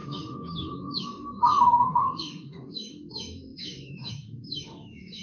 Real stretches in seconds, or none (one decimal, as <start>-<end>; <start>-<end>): none